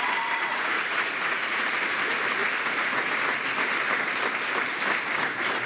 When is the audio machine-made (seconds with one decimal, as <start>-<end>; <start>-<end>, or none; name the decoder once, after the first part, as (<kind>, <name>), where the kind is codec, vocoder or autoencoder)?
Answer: 0.5-1.7 (vocoder, Vocos); 2.4-3.1